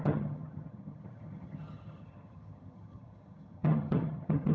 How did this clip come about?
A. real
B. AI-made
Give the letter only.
B